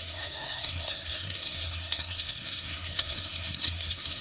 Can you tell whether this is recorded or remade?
remade